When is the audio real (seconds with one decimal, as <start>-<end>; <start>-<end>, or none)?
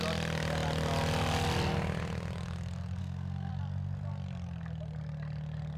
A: 0.0-3.0; 3.5-5.8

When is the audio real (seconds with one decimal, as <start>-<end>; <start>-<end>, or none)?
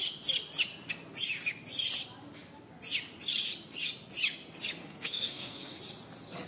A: 0.0-4.8; 5.8-6.5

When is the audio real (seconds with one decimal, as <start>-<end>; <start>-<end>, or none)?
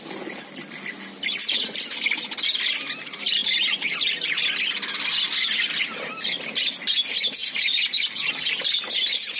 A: 0.0-9.4